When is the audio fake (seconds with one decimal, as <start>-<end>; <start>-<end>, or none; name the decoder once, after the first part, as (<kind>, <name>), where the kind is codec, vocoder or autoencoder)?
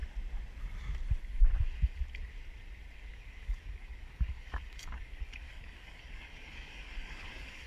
3.1-7.7 (codec, DAC)